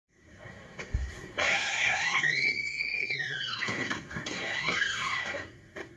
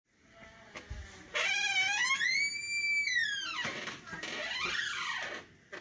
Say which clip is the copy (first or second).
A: first